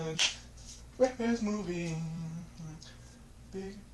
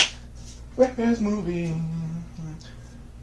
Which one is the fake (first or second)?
first